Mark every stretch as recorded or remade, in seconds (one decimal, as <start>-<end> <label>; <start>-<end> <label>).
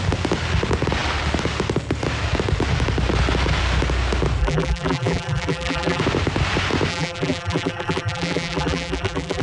0.0-4.4 recorded; 4.4-6.0 remade; 6.0-6.9 recorded; 6.9-9.4 remade